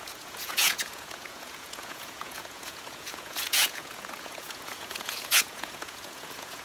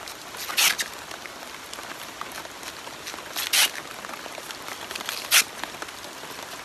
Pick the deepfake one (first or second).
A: first